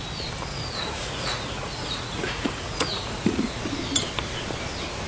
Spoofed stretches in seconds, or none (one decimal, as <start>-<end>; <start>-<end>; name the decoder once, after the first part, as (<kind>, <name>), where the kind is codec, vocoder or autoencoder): 0.5-3.6 (vocoder, Vocos)

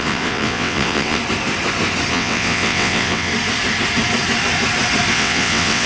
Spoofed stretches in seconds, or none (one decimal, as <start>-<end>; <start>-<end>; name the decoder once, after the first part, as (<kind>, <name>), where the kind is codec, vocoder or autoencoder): 0.0-1.2 (vocoder, WaveNeXt); 2.1-3.3; 5.1-5.9

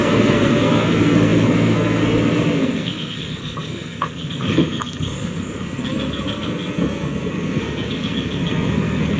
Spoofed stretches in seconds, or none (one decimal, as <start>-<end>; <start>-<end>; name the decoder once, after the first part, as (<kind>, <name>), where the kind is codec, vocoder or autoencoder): 0.0-9.2 (codec, SNAC)